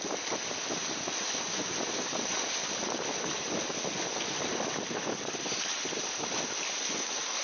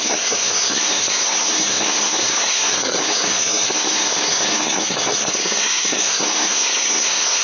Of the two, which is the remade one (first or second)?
second